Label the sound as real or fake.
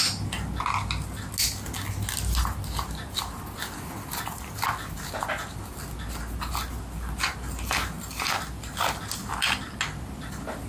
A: real